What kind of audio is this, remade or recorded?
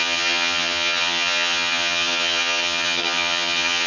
remade